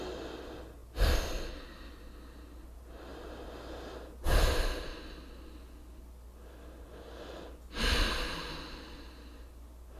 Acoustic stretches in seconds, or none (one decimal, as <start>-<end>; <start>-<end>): 0.0-10.0